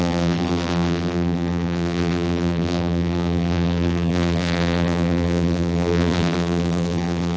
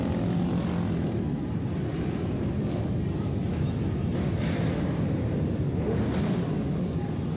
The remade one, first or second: first